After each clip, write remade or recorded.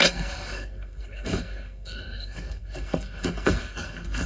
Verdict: remade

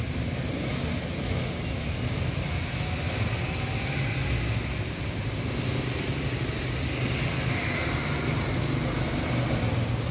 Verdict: recorded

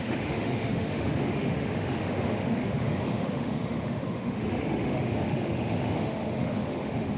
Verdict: remade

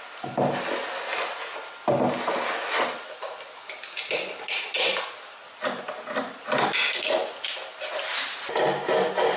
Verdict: recorded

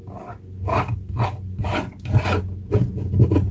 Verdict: recorded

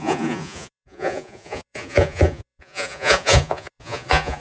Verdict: remade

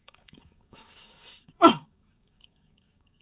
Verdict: remade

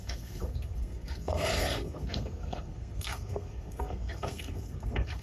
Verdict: remade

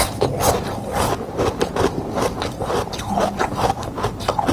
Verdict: recorded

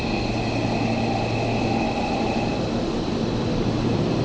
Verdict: recorded